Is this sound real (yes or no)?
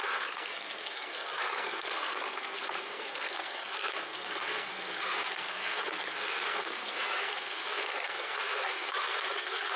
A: no